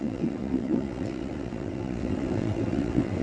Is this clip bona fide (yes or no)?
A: no